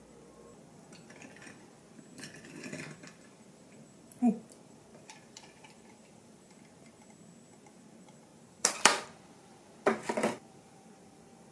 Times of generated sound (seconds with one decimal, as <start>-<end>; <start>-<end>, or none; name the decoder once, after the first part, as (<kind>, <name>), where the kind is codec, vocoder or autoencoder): 4.9-6.6 (vocoder, BigVGAN v2); 8.3-11.5